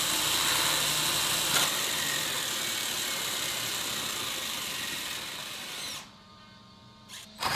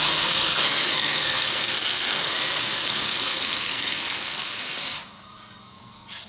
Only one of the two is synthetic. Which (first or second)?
second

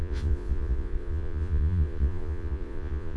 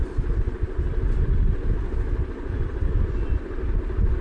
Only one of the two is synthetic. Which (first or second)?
first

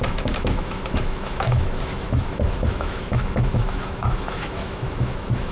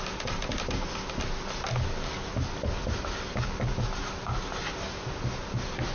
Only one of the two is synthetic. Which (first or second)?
first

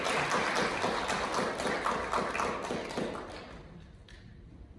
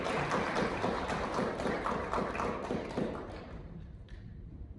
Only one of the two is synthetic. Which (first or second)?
second